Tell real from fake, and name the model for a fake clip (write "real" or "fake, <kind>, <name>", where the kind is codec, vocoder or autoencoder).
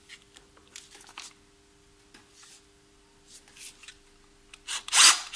real